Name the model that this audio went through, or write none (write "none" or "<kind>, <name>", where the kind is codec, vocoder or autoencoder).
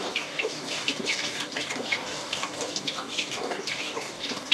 codec, DAC